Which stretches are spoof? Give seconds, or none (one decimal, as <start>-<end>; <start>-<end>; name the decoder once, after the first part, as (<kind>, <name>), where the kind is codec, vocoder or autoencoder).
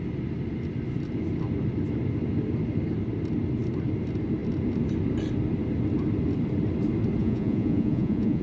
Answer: 7.2-8.4 (vocoder, Vocos)